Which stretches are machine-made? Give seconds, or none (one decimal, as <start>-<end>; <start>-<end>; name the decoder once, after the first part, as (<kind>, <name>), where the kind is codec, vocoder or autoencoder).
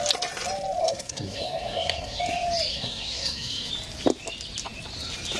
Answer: 0.8-2.2 (codec, SNAC); 2.7-3.7